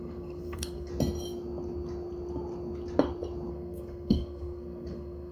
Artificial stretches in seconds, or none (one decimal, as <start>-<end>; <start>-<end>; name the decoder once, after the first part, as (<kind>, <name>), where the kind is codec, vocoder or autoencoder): 0.0-0.9 (codec, SNAC); 3.5-5.3